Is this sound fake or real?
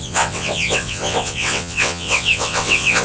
fake